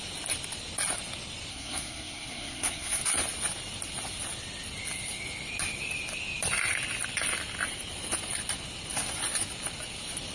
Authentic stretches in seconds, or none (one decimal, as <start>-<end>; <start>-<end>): 0.0-1.5; 3.0-10.3